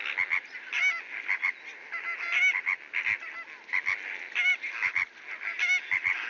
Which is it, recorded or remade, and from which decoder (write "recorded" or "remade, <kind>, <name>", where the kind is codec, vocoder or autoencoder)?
recorded